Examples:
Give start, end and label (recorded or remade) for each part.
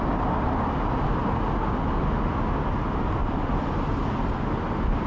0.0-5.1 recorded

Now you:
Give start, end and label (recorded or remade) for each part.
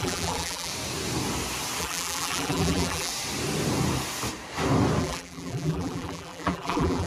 0.0-0.7 remade; 0.7-1.8 recorded; 1.8-3.1 remade; 3.1-5.0 recorded; 5.0-7.1 remade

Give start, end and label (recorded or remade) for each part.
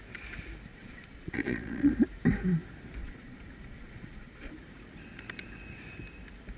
0.0-0.7 recorded; 0.7-1.9 remade; 1.9-3.0 recorded; 3.0-4.5 remade; 4.5-6.6 recorded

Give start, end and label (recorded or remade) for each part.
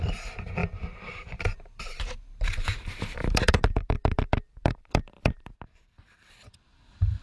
0.0-7.2 remade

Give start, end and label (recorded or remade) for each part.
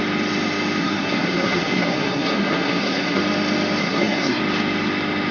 0.0-0.8 recorded; 0.8-3.2 remade; 3.2-3.8 recorded; 3.8-4.4 remade; 4.4-5.3 recorded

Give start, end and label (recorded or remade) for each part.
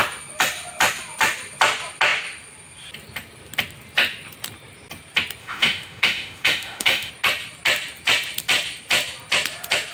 0.0-5.4 recorded; 5.4-7.1 remade; 7.1-9.9 recorded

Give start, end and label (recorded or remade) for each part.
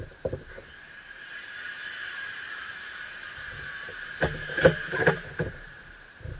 0.0-6.4 remade